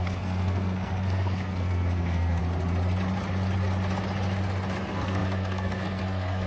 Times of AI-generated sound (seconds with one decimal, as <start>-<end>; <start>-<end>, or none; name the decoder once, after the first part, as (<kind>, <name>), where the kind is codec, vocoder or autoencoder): 0.0-2.4 (codec, SNAC); 4.8-6.5